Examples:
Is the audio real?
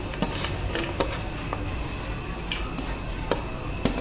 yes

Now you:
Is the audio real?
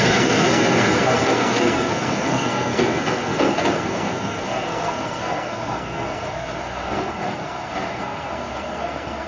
no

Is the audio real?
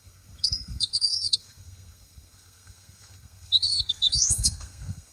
no